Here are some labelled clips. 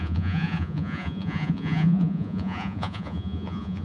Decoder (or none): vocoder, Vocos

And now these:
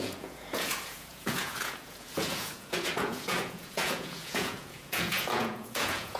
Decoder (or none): vocoder, Vocos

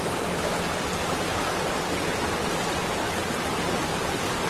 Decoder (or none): none